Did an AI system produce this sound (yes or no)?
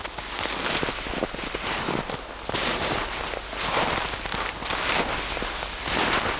no